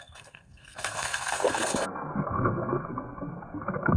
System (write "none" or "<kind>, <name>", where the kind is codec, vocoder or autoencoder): codec, SNAC